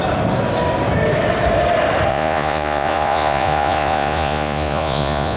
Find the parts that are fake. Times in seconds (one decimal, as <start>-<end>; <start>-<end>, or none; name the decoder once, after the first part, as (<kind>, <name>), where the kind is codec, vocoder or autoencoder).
2.1-5.4 (vocoder, Vocos)